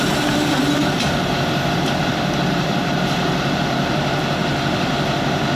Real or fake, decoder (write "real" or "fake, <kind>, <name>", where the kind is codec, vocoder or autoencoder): fake, vocoder, BigVGAN v2